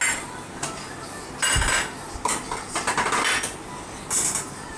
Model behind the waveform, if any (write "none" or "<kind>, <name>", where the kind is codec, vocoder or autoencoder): none